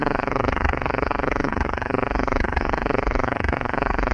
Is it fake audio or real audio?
fake